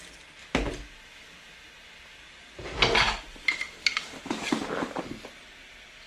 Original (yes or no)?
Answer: yes